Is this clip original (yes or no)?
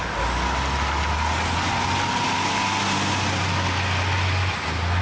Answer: yes